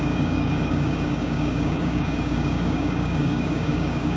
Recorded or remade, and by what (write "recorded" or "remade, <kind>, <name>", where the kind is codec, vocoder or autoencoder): remade, codec, DAC